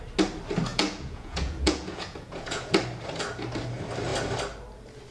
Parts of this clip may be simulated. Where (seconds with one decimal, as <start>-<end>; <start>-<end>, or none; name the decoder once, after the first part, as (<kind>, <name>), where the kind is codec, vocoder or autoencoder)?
0.7-2.7 (vocoder, Vocos)

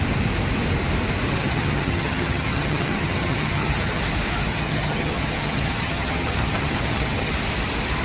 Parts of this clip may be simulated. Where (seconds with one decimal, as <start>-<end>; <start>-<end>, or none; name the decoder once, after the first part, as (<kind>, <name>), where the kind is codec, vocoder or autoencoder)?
1.4-4.0 (vocoder, HiFi-GAN); 4.5-7.3

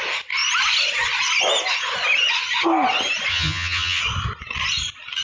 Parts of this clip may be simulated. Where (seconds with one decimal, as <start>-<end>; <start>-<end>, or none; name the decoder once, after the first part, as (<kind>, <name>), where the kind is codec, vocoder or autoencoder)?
3.3-4.0 (vocoder, HiFi-GAN)

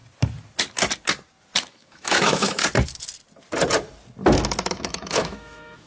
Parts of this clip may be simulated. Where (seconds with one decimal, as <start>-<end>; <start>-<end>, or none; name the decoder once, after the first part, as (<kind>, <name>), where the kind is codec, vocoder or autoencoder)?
1.7-2.6 (autoencoder, DAC-VAE); 4.7-5.9